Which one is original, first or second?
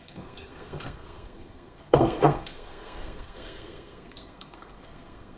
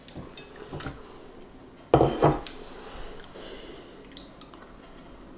second